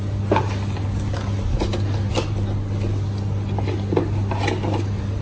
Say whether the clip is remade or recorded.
recorded